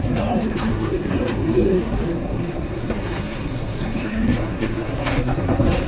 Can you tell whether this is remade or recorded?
remade